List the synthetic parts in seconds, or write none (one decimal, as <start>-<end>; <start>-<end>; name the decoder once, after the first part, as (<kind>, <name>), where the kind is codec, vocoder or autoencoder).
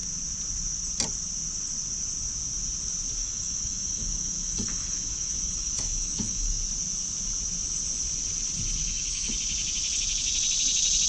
3.2-6.6 (autoencoder, DAC-VAE); 8.8-9.3